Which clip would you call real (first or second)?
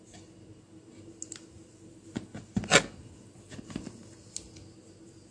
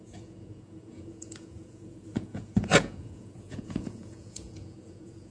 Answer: first